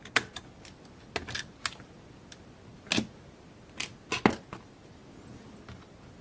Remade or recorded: recorded